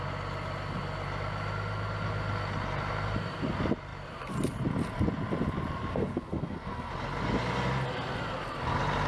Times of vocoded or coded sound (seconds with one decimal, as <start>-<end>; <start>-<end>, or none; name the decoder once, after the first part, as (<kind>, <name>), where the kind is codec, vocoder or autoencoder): 5.9-6.9 (codec, SNAC)